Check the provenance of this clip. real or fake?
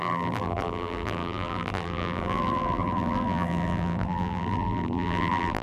fake